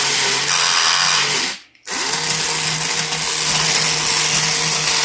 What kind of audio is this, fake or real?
real